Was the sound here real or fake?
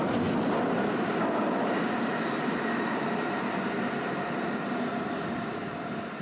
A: real